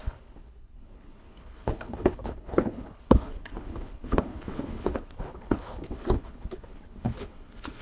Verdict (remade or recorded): remade